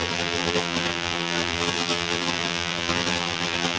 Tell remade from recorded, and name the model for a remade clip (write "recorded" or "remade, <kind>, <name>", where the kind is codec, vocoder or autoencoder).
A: remade, vocoder, BigVGAN v2